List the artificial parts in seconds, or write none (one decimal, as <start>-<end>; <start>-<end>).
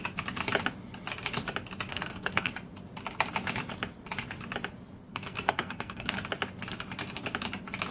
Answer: 1.9-2.5; 5.1-6.2